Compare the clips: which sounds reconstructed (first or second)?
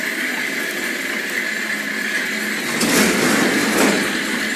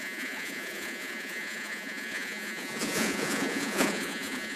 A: second